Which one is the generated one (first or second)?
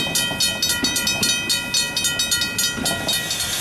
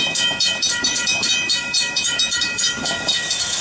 second